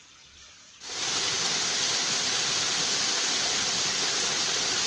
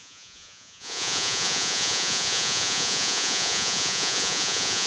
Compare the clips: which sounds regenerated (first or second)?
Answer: second